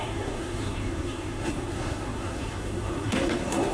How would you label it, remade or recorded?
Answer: remade